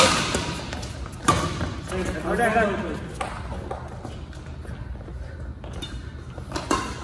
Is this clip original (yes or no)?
yes